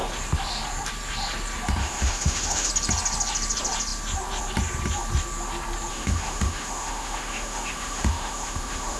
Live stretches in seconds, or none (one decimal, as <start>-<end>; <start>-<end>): 0.0-1.8; 2.7-5.9